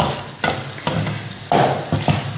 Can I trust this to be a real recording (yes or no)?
yes